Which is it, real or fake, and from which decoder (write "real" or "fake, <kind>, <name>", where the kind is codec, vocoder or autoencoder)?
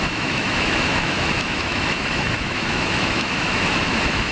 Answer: fake, autoencoder, DAC-VAE